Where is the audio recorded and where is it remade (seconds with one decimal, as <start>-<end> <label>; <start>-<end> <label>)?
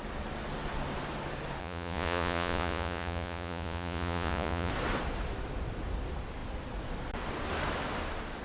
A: 0.0-1.6 recorded; 1.6-4.7 remade; 4.7-8.4 recorded